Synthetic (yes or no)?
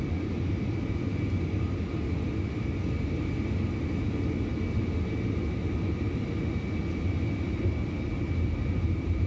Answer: no